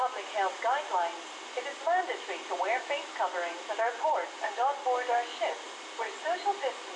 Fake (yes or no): no